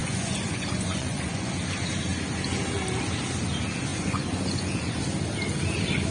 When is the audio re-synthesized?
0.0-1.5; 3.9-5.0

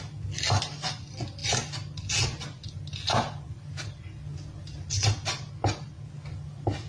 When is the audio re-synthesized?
none

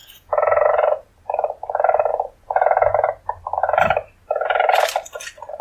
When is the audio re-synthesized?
0.0-1.1; 2.1-2.9